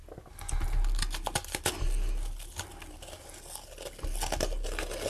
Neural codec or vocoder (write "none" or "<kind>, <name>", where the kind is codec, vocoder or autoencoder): none